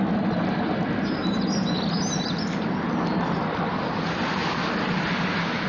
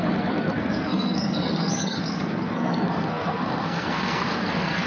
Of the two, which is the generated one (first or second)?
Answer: second